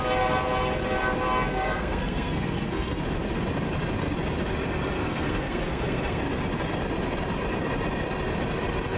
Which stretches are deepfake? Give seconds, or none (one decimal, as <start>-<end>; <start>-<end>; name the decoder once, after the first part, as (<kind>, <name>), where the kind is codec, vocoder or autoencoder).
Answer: 1.5-3.0 (codec, SNAC); 5.0-6.2